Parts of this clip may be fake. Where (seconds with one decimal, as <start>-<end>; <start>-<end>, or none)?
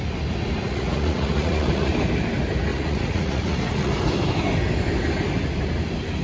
0.6-1.9; 2.7-3.9